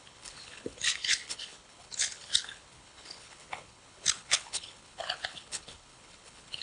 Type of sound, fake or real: fake